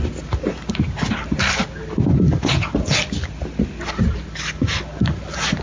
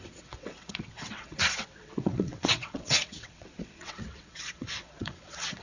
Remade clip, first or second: second